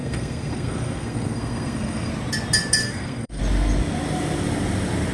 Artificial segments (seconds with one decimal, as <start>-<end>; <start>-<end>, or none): 0.0-2.1; 2.8-3.4